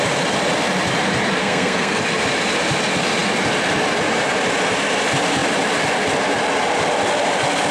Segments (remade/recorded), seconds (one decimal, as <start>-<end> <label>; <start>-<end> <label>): 0.0-1.4 recorded; 1.4-2.0 remade; 2.0-7.7 recorded